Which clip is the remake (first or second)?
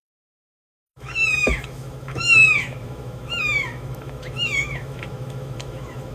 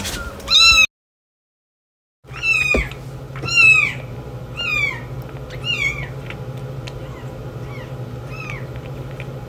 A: first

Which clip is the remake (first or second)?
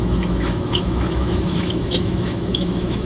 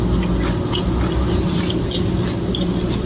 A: first